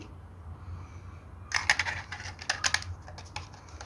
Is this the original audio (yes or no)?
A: yes